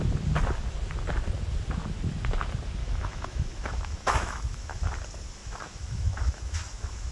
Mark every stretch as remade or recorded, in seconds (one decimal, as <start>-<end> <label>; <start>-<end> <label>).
0.0-2.8 recorded; 2.8-4.8 remade; 4.8-5.4 recorded; 5.4-7.1 remade